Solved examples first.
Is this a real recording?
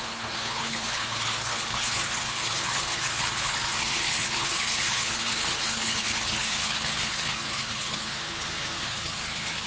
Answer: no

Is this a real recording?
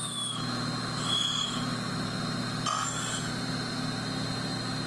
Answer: yes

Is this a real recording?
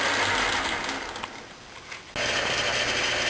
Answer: yes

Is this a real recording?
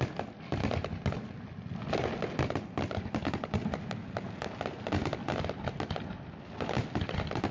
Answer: yes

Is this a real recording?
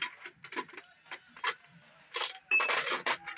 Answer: yes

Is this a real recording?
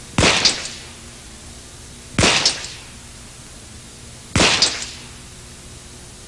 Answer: yes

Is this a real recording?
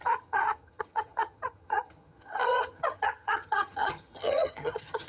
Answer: no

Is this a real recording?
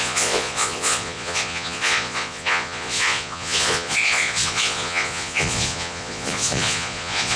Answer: no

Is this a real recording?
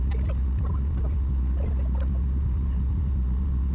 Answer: yes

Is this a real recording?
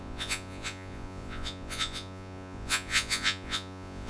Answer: no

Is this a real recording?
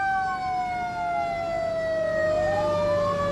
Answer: yes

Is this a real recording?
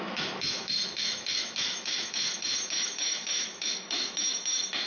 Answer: no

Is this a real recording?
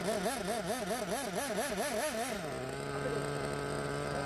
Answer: yes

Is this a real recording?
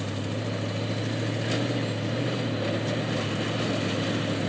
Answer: yes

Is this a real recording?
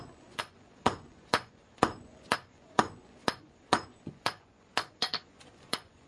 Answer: no